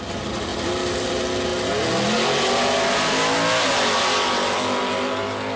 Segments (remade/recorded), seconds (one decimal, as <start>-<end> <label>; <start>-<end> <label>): 0.0-5.6 recorded